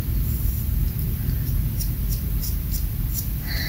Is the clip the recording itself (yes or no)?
no